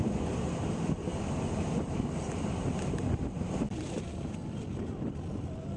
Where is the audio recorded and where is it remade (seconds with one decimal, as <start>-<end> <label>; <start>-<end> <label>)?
0.0-5.8 recorded